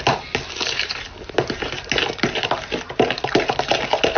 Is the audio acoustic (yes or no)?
yes